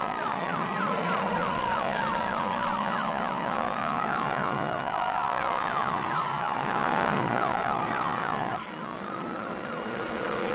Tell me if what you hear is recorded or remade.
remade